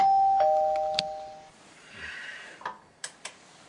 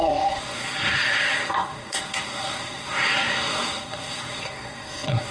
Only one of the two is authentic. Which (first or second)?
first